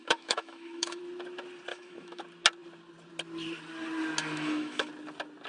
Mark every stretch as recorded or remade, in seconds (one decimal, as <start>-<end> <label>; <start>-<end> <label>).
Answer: 0.0-1.0 remade; 1.0-1.7 recorded; 1.7-2.2 remade; 2.2-4.2 recorded; 4.2-4.9 remade; 4.9-5.5 recorded